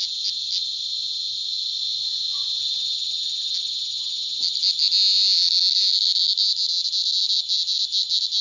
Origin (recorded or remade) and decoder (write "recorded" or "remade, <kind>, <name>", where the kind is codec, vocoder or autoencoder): recorded